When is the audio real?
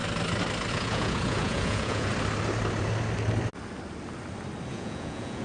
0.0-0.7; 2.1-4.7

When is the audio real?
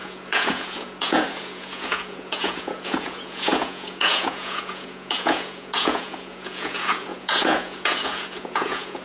none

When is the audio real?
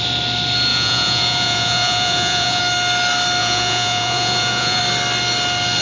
0.0-0.7; 2.6-3.4; 4.8-5.8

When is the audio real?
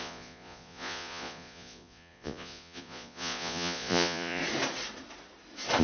4.4-5.8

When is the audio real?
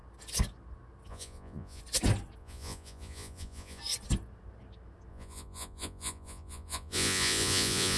0.0-1.1; 1.8-2.4; 3.8-5.1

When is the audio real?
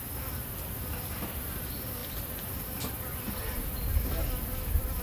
0.0-5.0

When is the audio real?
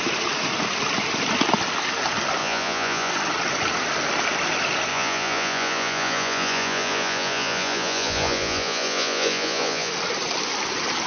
0.0-2.4; 3.1-4.9; 9.9-11.1